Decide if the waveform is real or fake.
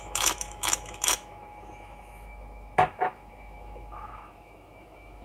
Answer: fake